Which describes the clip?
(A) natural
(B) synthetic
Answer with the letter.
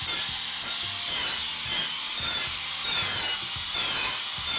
A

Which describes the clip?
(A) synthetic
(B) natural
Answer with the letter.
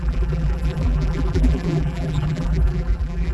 A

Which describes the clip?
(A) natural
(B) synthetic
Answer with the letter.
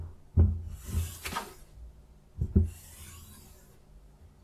A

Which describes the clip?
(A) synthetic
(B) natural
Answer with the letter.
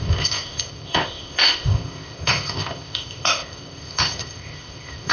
A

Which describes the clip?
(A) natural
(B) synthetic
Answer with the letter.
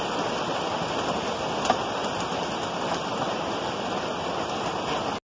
A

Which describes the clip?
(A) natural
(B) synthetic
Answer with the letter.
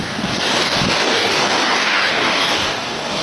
B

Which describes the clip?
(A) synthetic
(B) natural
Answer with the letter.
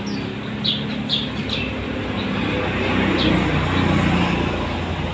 B